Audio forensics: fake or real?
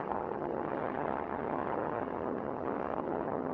fake